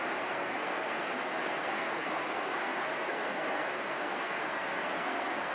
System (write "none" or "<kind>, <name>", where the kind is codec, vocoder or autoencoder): codec, SNAC